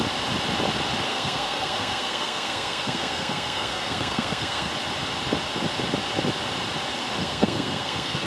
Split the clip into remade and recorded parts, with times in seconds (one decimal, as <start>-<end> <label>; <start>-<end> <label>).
0.0-1.1 recorded; 1.1-4.7 remade; 4.7-7.2 recorded; 7.2-8.3 remade